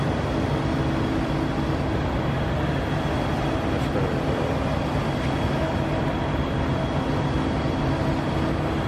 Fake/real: real